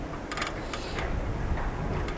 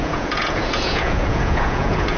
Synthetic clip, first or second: second